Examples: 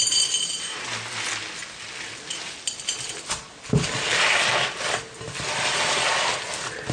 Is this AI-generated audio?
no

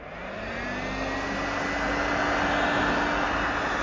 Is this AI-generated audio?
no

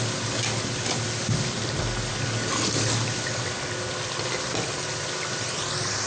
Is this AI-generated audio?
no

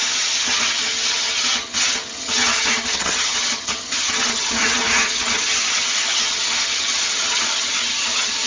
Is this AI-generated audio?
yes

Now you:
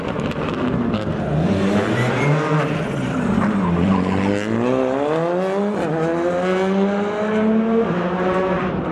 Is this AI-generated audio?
no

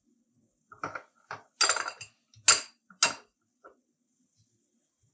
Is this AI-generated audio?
no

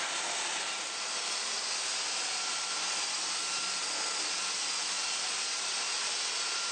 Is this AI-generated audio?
no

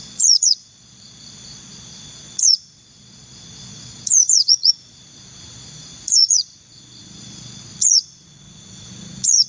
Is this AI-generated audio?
yes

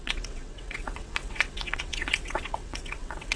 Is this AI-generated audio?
yes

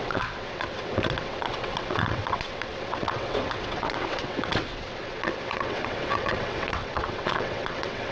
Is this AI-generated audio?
yes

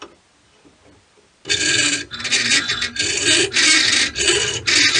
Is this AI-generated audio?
no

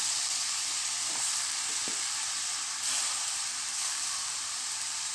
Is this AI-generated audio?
yes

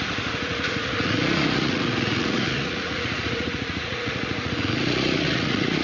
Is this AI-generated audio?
yes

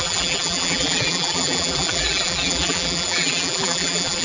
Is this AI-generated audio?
yes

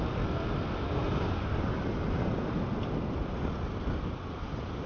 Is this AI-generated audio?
no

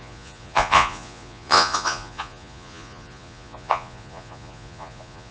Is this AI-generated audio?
yes